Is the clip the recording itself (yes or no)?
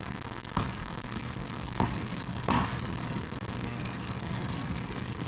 no